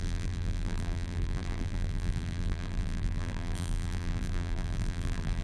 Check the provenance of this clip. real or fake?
fake